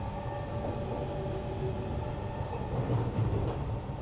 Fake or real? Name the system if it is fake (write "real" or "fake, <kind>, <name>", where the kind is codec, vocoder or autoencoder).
real